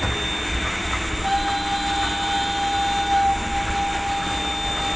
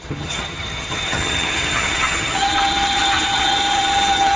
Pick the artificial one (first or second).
second